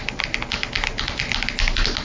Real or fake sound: real